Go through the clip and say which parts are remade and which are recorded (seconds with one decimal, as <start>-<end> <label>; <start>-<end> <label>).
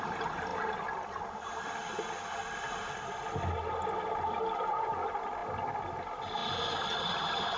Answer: 0.0-7.6 recorded